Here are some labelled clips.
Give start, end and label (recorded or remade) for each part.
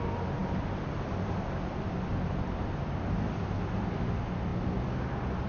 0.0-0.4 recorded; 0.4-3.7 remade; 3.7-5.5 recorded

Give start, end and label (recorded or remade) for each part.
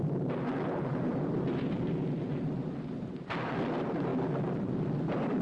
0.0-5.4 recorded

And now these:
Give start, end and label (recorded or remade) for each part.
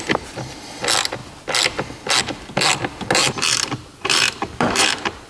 0.0-3.2 recorded; 3.2-5.3 remade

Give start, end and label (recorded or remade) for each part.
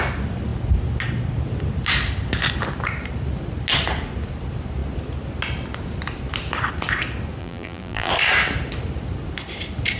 0.0-7.4 recorded; 7.4-8.1 remade; 8.1-10.0 recorded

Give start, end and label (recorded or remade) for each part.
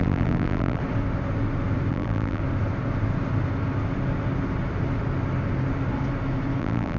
0.0-0.8 remade; 0.8-1.9 recorded; 1.9-2.4 remade; 2.4-6.6 recorded; 6.6-7.0 remade